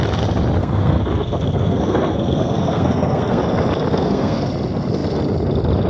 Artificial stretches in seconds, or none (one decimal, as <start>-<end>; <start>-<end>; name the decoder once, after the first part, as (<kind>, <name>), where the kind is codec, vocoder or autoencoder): 0.6-3.4 (codec, SNAC); 3.9-4.5